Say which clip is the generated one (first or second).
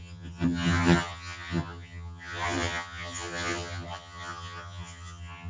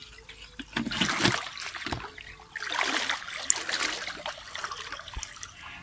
first